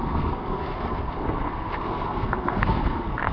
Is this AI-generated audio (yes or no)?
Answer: yes